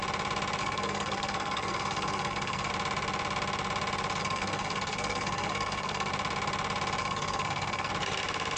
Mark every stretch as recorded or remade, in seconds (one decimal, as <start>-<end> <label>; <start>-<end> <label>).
0.0-0.6 recorded; 0.6-2.7 remade; 2.7-4.2 recorded; 4.2-6.1 remade; 6.1-7.0 recorded; 7.0-7.9 remade; 7.9-8.6 recorded